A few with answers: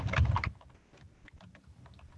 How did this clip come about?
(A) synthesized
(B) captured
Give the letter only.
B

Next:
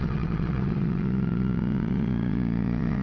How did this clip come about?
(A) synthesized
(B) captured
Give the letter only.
A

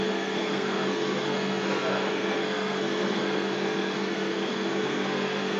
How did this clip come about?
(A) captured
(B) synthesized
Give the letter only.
B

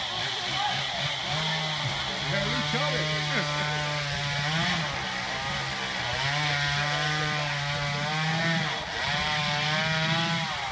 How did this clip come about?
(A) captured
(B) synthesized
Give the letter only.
A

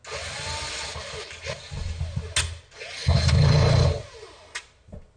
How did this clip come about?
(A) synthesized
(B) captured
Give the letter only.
B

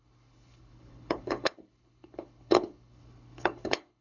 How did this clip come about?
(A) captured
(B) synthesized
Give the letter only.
B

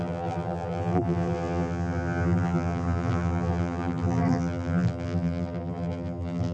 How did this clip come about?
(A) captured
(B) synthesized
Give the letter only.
B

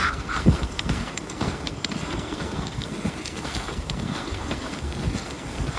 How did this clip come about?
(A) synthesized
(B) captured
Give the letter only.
A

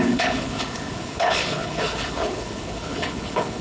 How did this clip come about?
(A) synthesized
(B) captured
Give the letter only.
A